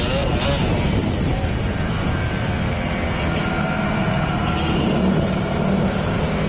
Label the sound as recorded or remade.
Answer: recorded